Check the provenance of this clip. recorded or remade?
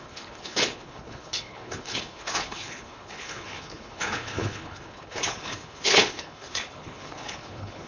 remade